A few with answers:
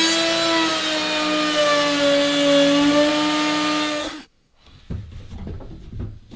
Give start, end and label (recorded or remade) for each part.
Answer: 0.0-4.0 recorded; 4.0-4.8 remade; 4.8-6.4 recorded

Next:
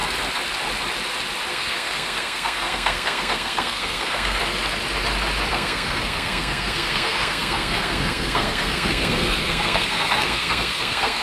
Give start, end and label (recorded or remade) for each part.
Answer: 0.0-1.5 recorded; 1.5-4.4 remade; 4.4-5.5 recorded; 5.5-11.2 remade

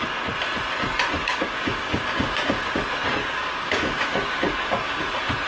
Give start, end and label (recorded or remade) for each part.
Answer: 0.0-1.2 recorded; 1.2-2.8 remade; 2.8-3.2 recorded; 3.2-5.0 remade; 5.0-5.5 recorded

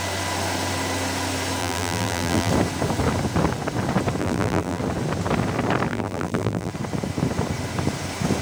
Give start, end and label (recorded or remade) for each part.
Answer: 0.0-1.6 recorded; 1.6-2.5 remade; 2.5-4.2 recorded; 4.2-4.8 remade; 4.8-5.9 recorded; 5.9-6.7 remade; 6.7-8.4 recorded

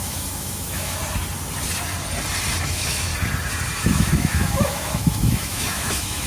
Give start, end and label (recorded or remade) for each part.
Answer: 0.0-1.0 remade; 1.0-2.6 recorded; 2.6-3.1 remade; 3.1-3.8 recorded; 3.8-6.3 remade

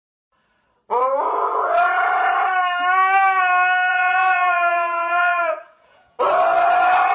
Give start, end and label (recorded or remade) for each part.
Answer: 0.0-3.9 recorded; 3.9-6.2 remade; 6.2-7.1 recorded

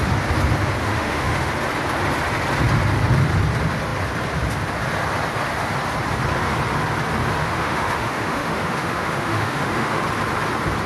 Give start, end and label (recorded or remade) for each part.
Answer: 0.0-0.8 recorded; 0.8-1.5 remade; 1.5-7.4 recorded; 7.4-10.0 remade; 10.0-10.9 recorded

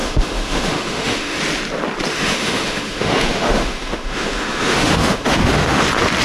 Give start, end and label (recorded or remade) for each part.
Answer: 0.0-1.4 remade; 1.4-2.1 recorded; 2.1-5.8 remade; 5.8-6.2 recorded